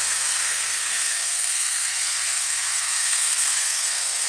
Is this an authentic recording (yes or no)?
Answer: no